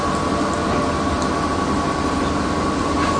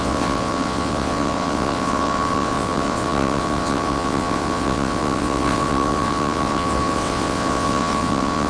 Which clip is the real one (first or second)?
first